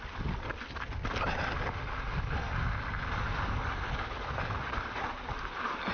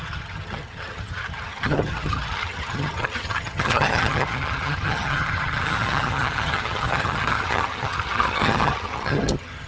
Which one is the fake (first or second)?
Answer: second